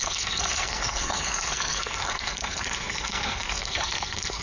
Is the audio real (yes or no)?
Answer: no